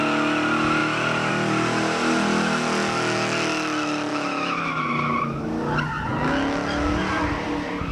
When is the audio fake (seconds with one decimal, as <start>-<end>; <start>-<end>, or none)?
4.1-5.4